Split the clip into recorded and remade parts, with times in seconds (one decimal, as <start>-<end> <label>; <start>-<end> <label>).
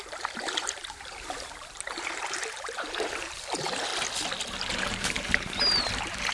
0.0-3.9 remade; 3.9-4.7 recorded; 4.7-6.3 remade